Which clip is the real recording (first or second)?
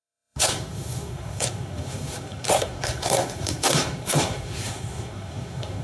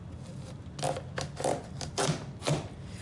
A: second